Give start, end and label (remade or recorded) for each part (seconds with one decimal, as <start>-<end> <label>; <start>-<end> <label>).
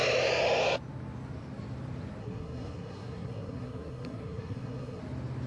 0.0-2.2 recorded; 2.2-5.0 remade; 5.0-5.5 recorded